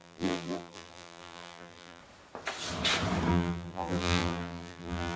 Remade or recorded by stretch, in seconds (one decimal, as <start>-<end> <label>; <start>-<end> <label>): 0.0-2.0 remade; 2.0-3.3 recorded; 3.3-5.2 remade

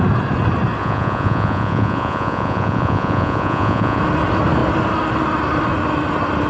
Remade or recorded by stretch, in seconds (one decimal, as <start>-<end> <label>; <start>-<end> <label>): 0.0-0.8 recorded; 0.8-4.0 remade; 4.0-6.5 recorded